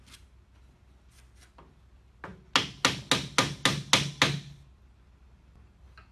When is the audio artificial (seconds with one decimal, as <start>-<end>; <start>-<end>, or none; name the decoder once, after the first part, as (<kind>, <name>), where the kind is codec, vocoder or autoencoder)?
none